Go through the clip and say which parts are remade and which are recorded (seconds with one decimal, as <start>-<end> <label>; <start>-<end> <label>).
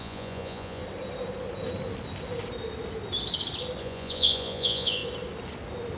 0.0-0.8 remade; 0.8-3.8 recorded; 3.8-5.0 remade; 5.0-6.0 recorded